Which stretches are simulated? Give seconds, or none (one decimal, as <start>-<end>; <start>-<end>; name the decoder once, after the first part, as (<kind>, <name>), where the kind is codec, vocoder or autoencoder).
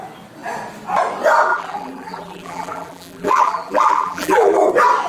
1.5-4.6 (vocoder, BigVGAN v2)